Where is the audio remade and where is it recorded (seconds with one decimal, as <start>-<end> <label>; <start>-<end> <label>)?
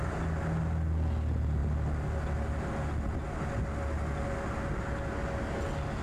0.0-6.0 recorded